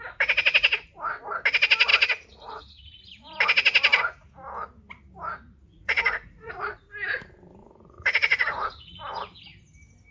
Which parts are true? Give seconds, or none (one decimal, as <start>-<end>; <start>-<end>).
0.0-1.9; 3.0-5.7; 6.6-7.6; 9.0-10.1